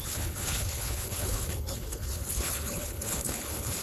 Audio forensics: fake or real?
fake